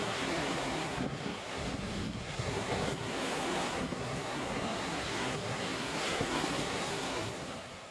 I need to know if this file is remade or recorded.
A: remade